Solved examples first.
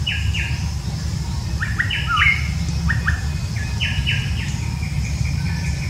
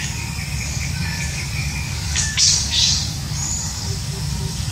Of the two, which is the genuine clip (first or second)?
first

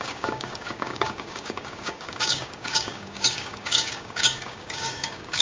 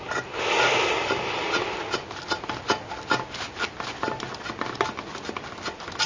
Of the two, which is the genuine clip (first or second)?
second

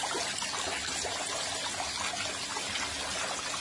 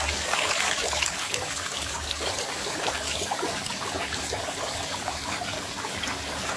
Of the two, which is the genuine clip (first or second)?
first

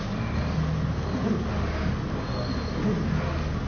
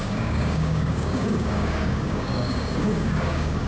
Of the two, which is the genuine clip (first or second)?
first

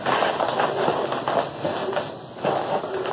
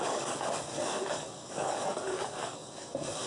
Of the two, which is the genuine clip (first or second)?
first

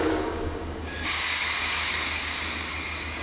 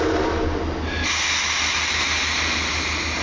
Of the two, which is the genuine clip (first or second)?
second